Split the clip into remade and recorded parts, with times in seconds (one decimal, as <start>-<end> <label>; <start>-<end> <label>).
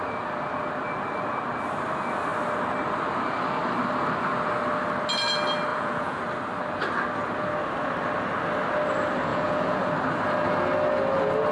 0.0-5.7 recorded; 5.7-6.2 remade; 6.2-9.3 recorded; 9.3-9.9 remade; 9.9-11.5 recorded